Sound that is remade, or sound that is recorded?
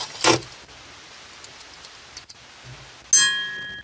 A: recorded